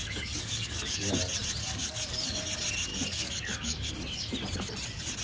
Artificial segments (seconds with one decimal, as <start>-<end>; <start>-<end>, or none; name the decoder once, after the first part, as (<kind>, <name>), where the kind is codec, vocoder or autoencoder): 0.0-1.1 (codec, DAC); 1.6-2.4; 2.9-3.9